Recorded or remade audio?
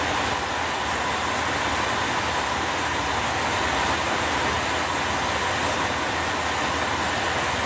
recorded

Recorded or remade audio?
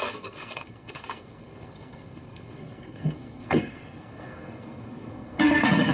remade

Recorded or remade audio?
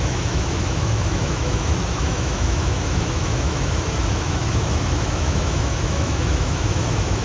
remade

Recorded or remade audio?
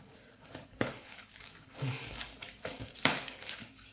remade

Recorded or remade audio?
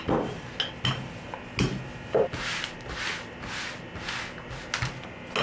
recorded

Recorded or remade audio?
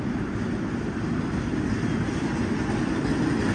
recorded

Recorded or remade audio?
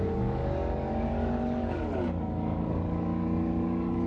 remade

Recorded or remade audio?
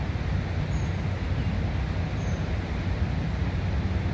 recorded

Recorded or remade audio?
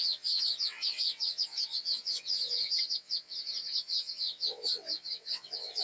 remade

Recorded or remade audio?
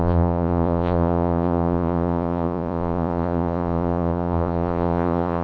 remade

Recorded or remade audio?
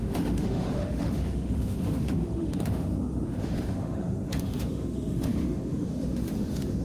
remade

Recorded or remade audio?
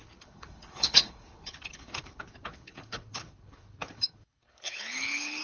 remade